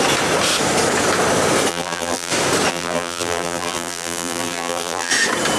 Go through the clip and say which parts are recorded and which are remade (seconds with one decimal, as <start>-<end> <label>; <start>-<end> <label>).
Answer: 0.0-1.7 recorded; 1.7-2.3 remade; 2.3-2.7 recorded; 2.7-5.1 remade; 5.1-5.6 recorded